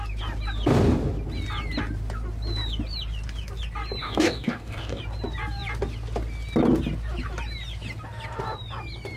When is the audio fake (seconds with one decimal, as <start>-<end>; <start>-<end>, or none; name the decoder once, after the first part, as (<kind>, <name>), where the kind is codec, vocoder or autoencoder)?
4.0-5.0 (codec, DAC)